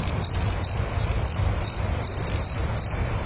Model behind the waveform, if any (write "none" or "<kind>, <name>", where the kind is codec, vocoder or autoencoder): none